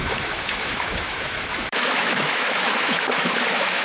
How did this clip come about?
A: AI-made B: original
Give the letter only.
A